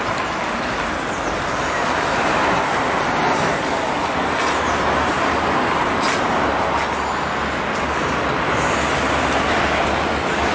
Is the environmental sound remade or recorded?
recorded